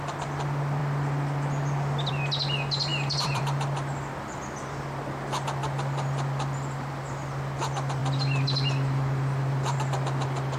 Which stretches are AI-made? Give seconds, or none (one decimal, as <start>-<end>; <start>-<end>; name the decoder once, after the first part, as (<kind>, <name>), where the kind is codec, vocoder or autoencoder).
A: 2.9-3.4 (vocoder, BigVGAN v2); 5.6-6.9; 8.0-10.6